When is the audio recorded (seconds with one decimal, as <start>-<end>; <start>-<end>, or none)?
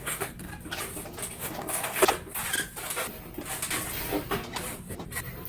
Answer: 0.5-1.3; 2.0-5.5